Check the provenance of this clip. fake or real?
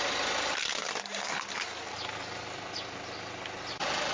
real